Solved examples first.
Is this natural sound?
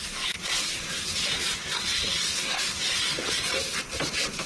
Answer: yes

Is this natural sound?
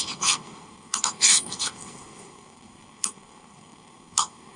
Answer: no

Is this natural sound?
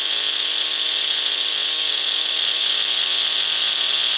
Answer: yes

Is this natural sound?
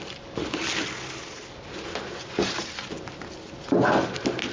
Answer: yes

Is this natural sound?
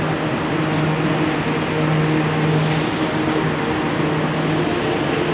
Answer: yes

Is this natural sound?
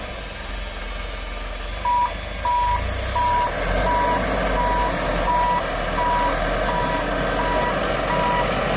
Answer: yes